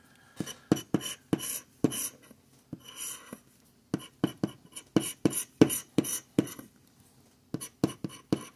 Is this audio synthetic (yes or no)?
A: no